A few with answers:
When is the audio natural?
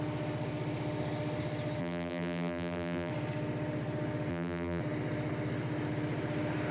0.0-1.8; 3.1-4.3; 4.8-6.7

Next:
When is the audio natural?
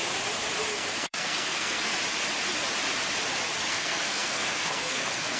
0.0-0.7; 1.9-3.7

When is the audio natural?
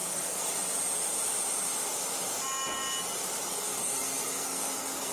0.5-3.5